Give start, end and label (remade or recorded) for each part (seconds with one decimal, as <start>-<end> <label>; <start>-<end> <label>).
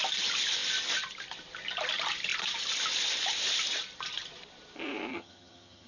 0.0-5.1 recorded; 5.1-5.9 remade